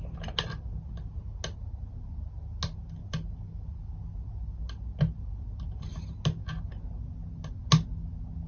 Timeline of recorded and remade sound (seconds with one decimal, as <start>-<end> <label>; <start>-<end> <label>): 0.0-8.5 recorded